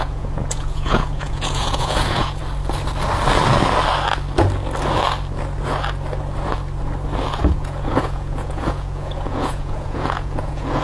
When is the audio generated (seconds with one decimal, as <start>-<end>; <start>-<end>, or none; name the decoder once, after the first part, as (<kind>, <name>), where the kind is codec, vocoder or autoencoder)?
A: 0.0-2.4 (vocoder, Vocos); 7.4-10.8